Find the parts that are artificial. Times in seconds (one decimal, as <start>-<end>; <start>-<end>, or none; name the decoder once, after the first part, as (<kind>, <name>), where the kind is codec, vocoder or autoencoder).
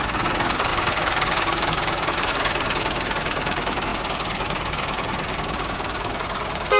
0.0-6.8 (codec, DAC)